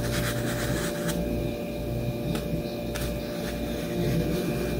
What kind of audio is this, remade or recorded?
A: recorded